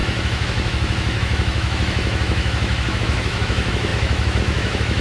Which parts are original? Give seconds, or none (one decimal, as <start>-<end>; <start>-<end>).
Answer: none